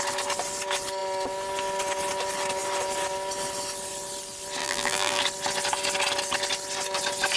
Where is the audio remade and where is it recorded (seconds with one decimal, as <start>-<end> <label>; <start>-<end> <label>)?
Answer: 0.0-4.6 recorded; 4.6-5.2 remade; 5.2-7.4 recorded